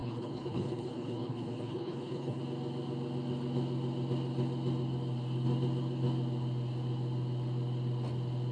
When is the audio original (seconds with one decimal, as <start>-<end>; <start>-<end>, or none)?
2.4-8.5